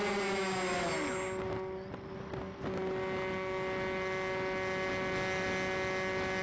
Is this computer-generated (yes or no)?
no